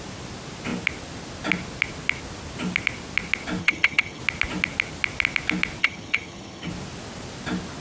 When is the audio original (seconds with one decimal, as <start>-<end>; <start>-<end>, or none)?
0.0-3.6; 4.2-5.8; 6.7-7.8